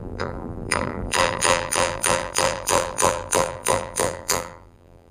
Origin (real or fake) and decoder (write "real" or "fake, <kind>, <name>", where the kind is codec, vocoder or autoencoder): fake, vocoder, BigVGAN v2